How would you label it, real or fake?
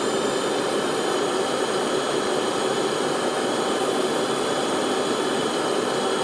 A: real